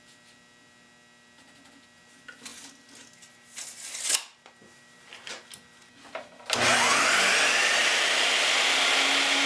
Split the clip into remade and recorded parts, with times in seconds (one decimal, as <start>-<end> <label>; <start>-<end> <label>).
0.0-7.8 recorded; 7.8-8.5 remade; 8.5-9.5 recorded